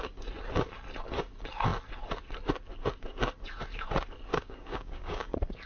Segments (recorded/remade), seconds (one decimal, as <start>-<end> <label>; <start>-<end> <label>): 0.0-4.3 recorded; 4.3-5.3 remade; 5.3-5.7 recorded